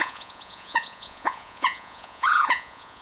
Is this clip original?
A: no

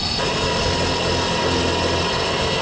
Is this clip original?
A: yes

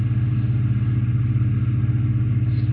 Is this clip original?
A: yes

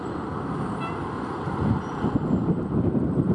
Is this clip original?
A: yes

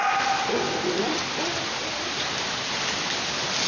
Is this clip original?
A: yes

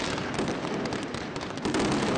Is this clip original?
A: yes